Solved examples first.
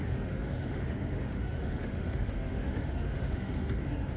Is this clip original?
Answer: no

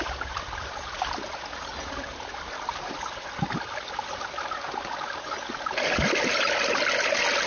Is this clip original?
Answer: yes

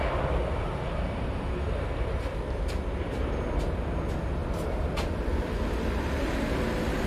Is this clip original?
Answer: yes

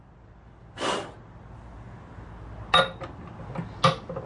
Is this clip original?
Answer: yes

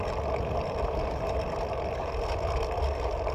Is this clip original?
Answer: no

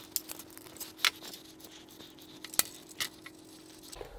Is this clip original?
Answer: yes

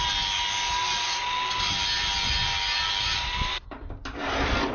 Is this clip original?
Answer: yes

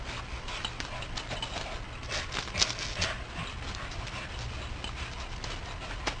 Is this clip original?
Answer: yes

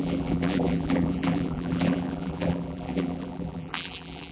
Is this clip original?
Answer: no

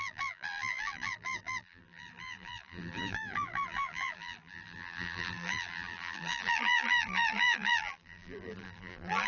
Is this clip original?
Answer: no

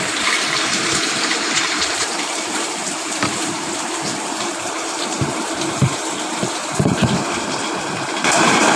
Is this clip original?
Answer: no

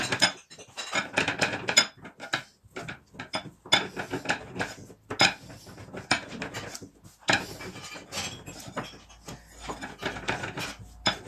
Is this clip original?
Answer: yes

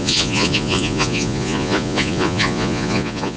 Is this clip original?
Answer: no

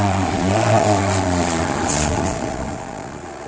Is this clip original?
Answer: no